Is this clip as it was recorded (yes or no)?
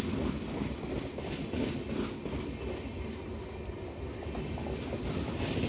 yes